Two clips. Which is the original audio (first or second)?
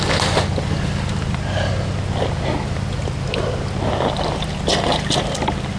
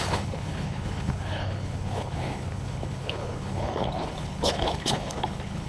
first